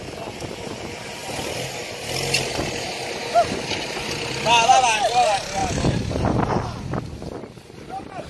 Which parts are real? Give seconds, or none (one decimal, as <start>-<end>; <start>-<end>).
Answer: 0.0-5.6; 6.8-8.3